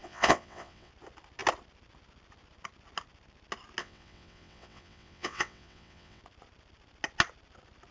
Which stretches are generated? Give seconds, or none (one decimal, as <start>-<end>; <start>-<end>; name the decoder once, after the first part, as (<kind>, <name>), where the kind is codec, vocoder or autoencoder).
0.0-0.9 (vocoder, WaveNeXt); 3.8-6.2